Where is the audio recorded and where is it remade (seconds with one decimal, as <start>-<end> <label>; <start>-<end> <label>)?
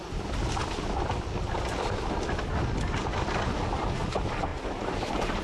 0.0-4.5 recorded; 4.5-5.4 remade